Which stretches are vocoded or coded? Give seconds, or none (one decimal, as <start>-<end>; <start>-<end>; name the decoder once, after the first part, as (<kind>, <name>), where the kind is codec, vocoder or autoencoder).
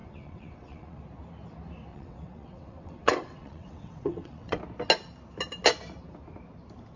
0.0-1.0 (vocoder, WaveNeXt); 1.9-4.6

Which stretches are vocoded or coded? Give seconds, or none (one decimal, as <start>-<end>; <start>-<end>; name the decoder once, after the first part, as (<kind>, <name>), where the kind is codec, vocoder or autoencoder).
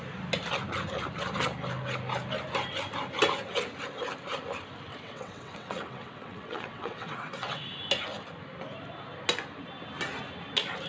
4.9-7.6 (vocoder, WaveNeXt)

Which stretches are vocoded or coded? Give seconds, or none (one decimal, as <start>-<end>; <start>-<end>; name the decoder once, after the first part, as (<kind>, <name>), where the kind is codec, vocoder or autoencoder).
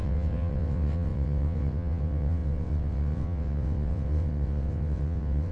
0.0-5.5 (vocoder, WaveNeXt)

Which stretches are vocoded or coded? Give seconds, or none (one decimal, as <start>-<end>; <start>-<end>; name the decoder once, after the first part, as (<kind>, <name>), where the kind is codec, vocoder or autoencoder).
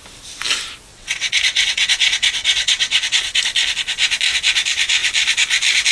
0.9-3.4 (vocoder, WaveNeXt)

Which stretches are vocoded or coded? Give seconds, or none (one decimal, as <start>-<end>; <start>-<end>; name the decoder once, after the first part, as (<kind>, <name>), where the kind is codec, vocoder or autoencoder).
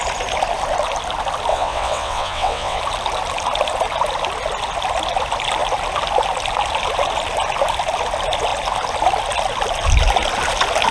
1.5-2.8 (vocoder, WaveNeXt)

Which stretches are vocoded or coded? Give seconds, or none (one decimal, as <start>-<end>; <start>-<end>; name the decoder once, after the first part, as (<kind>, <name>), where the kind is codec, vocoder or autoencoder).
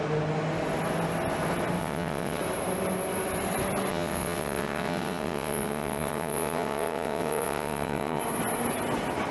1.8-2.4 (vocoder, WaveNeXt); 3.9-8.2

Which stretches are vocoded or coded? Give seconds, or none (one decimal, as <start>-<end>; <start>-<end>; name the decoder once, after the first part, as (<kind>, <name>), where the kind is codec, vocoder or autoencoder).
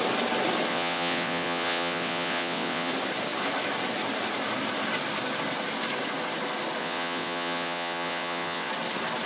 0.7-2.9 (vocoder, WaveNeXt); 6.8-8.7